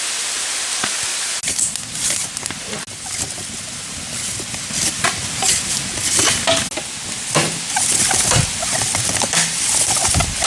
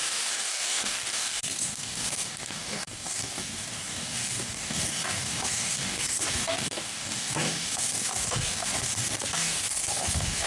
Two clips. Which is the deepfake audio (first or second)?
second